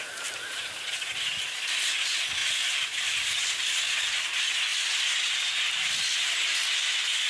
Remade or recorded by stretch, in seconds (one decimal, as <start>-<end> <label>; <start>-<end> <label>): 0.0-2.4 recorded; 2.4-4.1 remade; 4.1-7.3 recorded